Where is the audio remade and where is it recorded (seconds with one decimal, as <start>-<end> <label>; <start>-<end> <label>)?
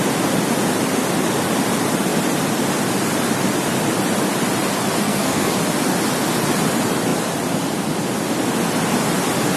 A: 0.0-5.0 recorded; 5.0-5.5 remade; 5.5-9.6 recorded